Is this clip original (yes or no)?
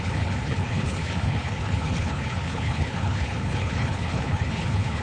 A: no